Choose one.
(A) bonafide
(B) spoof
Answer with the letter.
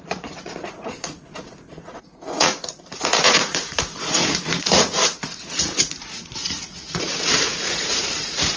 B